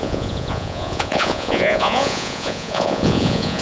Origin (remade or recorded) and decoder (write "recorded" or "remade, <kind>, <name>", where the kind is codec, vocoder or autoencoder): remade, vocoder, Vocos